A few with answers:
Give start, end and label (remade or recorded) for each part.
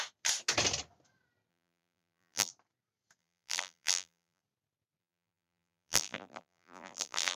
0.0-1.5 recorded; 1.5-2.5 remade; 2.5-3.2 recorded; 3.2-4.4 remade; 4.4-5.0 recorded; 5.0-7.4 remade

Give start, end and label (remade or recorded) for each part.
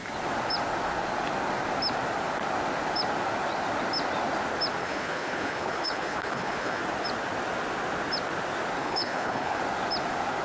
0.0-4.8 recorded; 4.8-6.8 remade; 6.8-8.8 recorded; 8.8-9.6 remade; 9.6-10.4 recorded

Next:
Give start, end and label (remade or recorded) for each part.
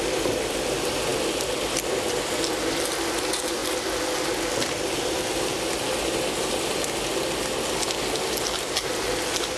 0.0-9.6 recorded